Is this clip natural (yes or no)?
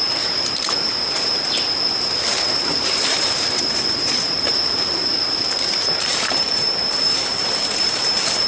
no